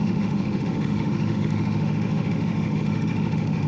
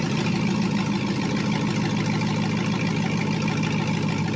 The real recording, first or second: second